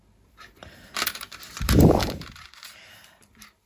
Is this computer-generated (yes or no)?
yes